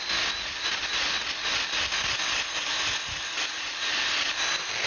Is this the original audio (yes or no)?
yes